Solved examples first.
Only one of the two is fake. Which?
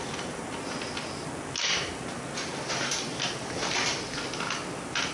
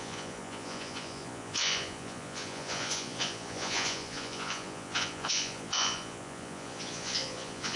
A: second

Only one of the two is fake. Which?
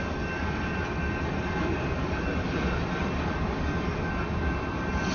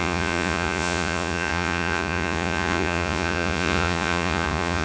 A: second